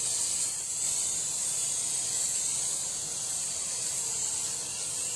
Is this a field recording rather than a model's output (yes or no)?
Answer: yes